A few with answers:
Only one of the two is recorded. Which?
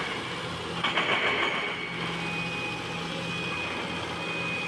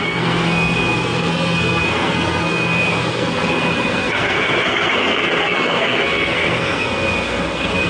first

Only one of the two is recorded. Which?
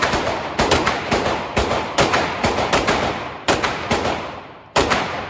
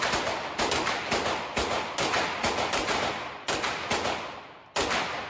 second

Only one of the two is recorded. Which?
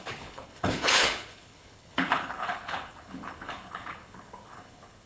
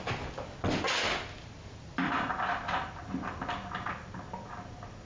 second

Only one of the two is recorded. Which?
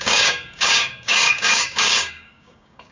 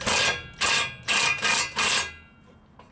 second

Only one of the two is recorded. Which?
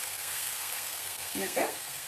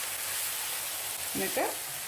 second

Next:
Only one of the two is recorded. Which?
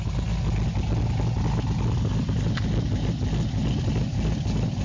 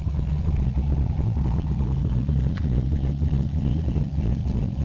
first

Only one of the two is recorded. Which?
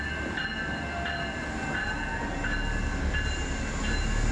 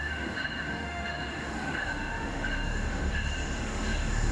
first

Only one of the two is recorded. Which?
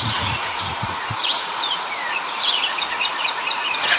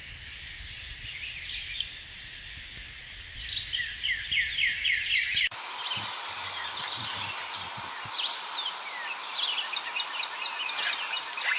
second